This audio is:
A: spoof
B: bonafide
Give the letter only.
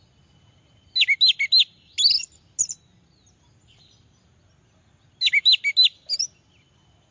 B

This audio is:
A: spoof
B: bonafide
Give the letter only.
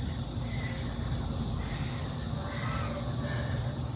B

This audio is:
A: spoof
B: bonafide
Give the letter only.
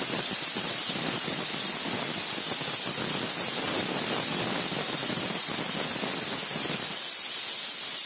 B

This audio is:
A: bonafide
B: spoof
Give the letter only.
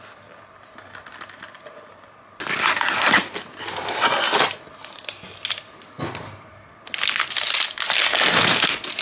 A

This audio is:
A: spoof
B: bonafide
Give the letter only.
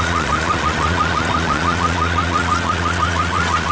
A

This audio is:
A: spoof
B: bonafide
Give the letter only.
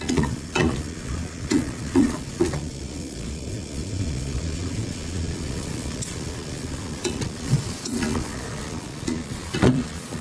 A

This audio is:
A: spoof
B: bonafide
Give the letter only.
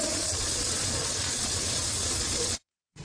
A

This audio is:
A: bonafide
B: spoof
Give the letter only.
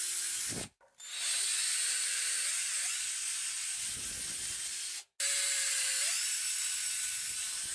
A